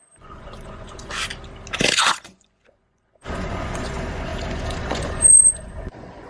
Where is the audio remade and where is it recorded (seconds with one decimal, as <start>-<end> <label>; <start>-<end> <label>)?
0.0-1.2 remade; 1.2-2.0 recorded; 2.0-6.3 remade